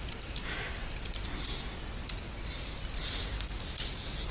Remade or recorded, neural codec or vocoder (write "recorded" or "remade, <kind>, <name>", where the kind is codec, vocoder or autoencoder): recorded